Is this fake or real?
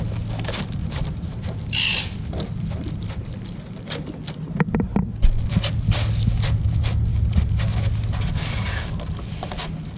real